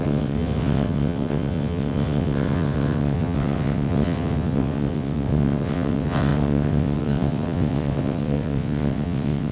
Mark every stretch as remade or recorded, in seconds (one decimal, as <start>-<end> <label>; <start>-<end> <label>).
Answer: 0.0-9.5 remade

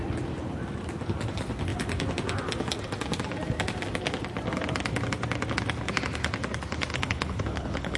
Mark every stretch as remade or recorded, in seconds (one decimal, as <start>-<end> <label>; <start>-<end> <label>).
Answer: 0.0-6.9 recorded; 6.9-8.0 remade

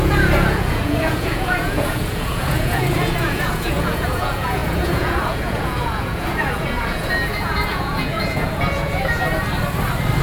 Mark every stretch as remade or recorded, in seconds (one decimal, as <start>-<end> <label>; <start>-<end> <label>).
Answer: 0.0-9.2 remade; 9.2-10.2 recorded

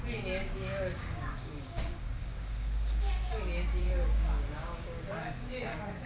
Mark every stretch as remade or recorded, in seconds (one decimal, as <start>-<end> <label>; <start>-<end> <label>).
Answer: 0.0-0.4 recorded; 0.4-3.4 remade; 3.4-3.8 recorded; 3.8-6.1 remade

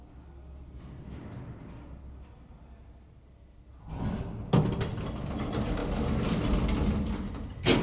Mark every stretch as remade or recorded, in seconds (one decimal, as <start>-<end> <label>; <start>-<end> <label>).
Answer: 0.0-7.8 recorded

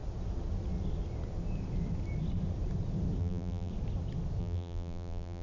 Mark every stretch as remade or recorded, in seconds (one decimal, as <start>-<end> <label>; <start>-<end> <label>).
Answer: 0.0-3.2 recorded; 3.2-3.7 remade; 3.7-4.4 recorded; 4.4-5.4 remade

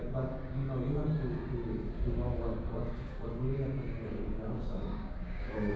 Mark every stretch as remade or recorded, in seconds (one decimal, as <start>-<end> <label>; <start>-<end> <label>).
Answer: 0.0-0.6 remade; 0.6-4.1 recorded; 4.1-5.8 remade